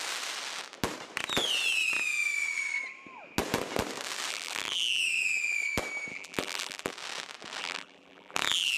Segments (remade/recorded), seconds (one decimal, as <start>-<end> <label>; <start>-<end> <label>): 0.0-4.3 recorded; 4.3-5.0 remade; 5.0-6.1 recorded; 6.1-6.9 remade; 6.9-7.6 recorded; 7.6-8.8 remade